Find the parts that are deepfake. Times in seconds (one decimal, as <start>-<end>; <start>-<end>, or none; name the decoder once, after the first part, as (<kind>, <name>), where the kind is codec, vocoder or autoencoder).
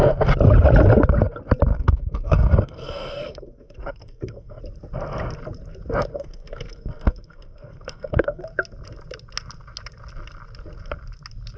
1.7-4.6 (codec, SNAC); 6.1-8.4